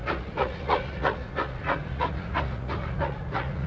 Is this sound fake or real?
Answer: fake